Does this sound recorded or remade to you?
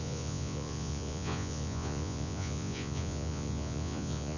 remade